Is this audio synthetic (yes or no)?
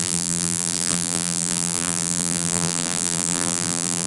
yes